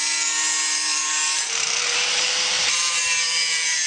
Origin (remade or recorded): remade